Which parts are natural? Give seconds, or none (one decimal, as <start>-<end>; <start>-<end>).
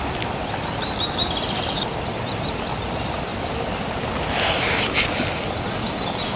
0.0-6.4